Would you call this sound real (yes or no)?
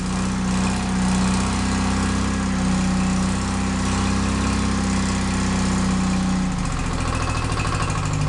yes